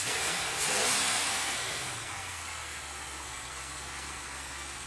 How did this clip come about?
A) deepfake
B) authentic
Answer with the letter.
A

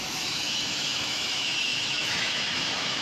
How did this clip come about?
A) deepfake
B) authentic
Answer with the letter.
A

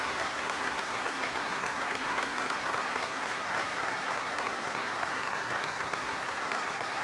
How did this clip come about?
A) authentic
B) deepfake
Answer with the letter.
B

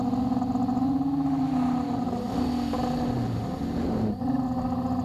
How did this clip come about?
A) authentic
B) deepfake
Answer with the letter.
A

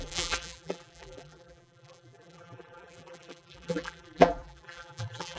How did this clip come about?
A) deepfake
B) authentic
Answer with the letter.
A